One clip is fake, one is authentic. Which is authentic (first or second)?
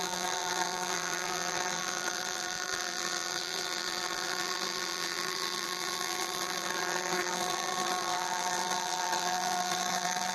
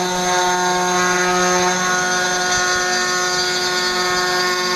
second